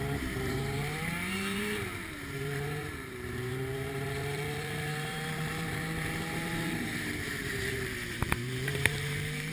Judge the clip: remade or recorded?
remade